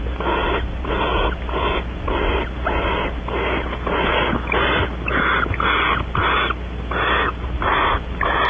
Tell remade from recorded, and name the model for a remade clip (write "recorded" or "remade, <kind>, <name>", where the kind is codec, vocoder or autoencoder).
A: recorded